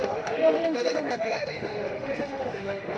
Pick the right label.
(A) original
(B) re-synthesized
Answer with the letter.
B